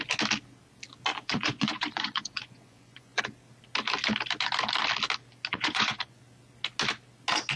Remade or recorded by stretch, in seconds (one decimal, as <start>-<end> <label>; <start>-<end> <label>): 0.0-1.1 recorded; 1.1-3.2 remade; 3.2-5.5 recorded; 5.5-6.2 remade; 6.2-7.6 recorded

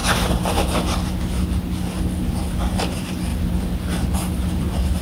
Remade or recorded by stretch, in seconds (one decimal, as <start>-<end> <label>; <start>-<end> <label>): 0.0-2.6 recorded; 2.6-3.3 remade; 3.3-4.6 recorded; 4.6-5.0 remade

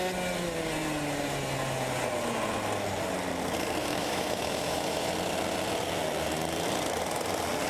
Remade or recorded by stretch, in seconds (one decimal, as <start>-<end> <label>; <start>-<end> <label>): 0.0-3.8 recorded; 3.8-5.1 remade; 5.1-7.7 recorded

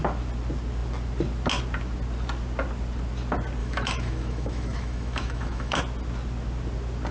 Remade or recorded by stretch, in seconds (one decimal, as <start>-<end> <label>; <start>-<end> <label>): 0.0-3.6 recorded; 3.6-5.8 remade; 5.8-7.1 recorded

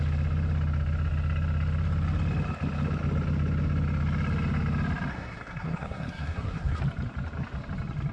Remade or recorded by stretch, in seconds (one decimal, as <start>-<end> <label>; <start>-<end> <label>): 0.0-5.1 recorded; 5.1-6.8 remade; 6.8-8.1 recorded

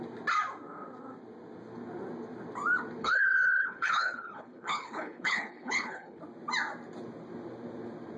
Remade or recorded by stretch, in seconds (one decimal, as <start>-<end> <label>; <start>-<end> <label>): 0.0-3.0 recorded; 3.0-6.2 remade; 6.2-8.2 recorded